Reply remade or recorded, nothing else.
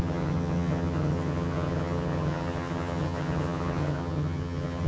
remade